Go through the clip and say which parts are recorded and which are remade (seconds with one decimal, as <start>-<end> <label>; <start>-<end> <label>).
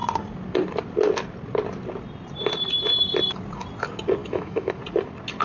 0.0-4.2 recorded; 4.2-4.8 remade; 4.8-5.4 recorded